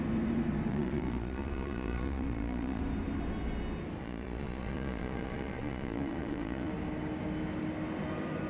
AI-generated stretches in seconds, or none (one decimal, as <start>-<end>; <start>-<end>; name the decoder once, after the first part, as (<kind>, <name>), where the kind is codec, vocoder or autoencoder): 0.7-2.8 (vocoder, Vocos); 4.0-6.7